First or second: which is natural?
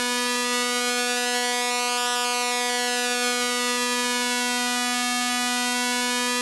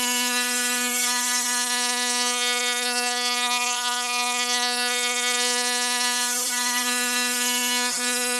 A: first